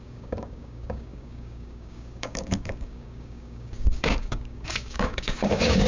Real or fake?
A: fake